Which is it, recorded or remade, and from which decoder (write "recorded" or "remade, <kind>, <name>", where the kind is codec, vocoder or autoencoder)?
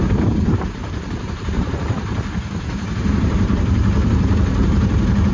remade, vocoder, BigVGAN v2